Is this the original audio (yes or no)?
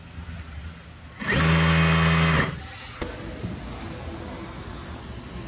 yes